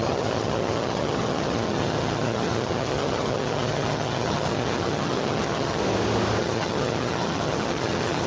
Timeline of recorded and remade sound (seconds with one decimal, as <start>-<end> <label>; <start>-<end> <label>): 0.0-5.8 remade; 5.8-6.4 recorded; 6.4-8.3 remade